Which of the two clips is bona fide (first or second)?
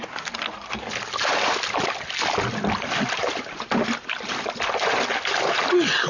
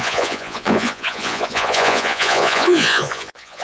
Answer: first